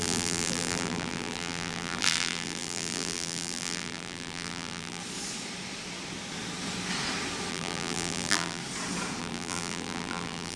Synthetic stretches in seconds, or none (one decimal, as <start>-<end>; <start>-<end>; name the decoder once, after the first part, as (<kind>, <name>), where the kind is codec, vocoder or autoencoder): 0.0-5.0 (vocoder, BigVGAN v2); 7.5-8.6; 9.2-10.6